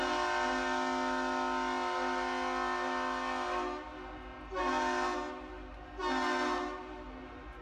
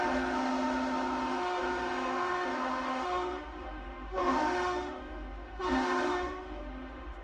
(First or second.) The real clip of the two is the first